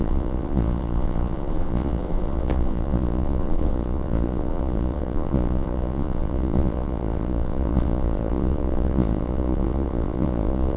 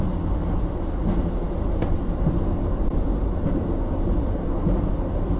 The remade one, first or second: first